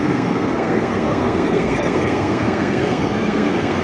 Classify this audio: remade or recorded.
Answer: remade